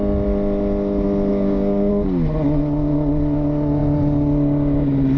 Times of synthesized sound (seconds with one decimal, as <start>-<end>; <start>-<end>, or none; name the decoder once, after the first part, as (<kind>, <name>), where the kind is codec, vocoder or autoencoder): 1.3-1.9 (codec, DAC)